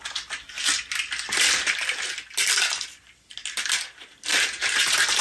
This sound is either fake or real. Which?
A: real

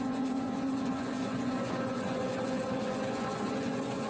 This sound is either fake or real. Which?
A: fake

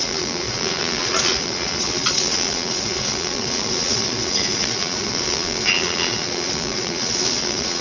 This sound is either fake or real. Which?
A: fake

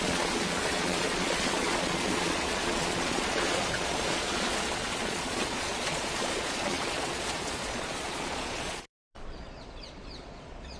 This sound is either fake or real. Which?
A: fake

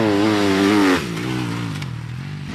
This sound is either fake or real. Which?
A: real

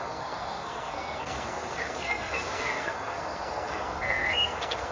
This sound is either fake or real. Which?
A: fake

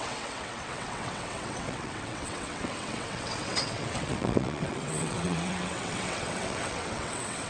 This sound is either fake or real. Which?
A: fake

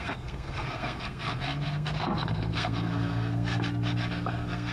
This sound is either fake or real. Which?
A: fake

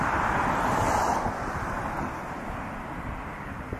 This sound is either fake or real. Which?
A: real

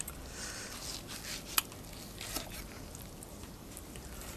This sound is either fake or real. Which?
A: real